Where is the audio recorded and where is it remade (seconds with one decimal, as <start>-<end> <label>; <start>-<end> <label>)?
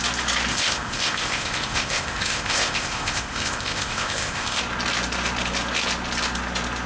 0.0-0.5 recorded; 0.5-4.6 remade; 4.6-6.9 recorded